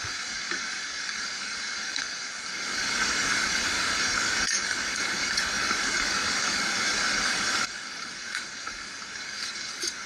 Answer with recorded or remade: remade